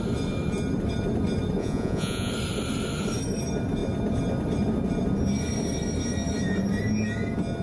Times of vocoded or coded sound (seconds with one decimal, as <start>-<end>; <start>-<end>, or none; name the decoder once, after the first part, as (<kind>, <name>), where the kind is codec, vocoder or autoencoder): 1.6-2.3 (vocoder, Vocos)